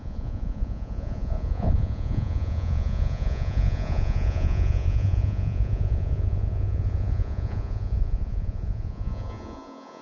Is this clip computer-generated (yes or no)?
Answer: yes